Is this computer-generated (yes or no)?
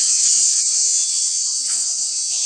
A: yes